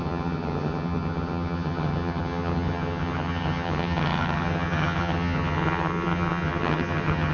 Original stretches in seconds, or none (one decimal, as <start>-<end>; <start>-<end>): none